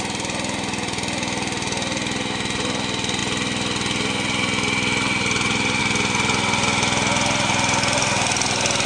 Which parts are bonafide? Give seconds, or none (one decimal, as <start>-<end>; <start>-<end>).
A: 0.0-8.9